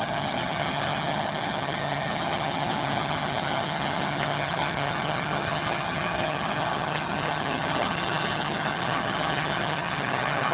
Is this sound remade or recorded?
remade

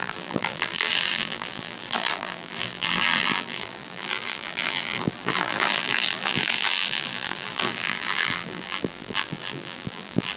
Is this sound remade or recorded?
remade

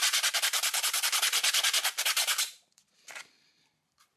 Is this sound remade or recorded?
remade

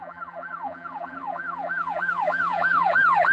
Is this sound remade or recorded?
remade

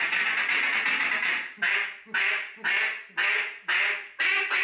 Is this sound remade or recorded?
recorded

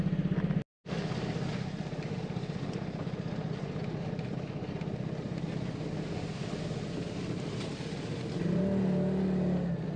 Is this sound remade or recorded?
recorded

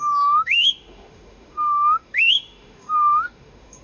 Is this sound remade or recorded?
remade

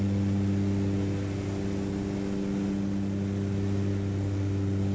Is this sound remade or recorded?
recorded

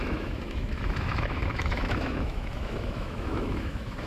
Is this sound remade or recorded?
remade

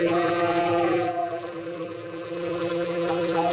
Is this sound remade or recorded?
remade